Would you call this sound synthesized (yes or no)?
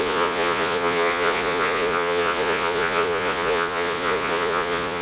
yes